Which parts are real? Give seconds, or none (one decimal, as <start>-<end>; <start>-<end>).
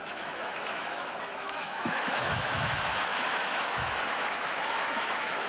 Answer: none